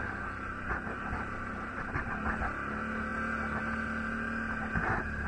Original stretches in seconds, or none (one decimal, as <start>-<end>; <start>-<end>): 0.0-5.3